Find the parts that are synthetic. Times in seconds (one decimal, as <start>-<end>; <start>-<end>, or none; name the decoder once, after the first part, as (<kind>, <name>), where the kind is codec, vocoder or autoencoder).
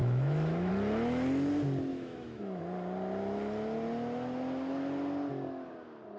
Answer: 0.0-0.7 (autoencoder, DAC-VAE); 1.9-2.6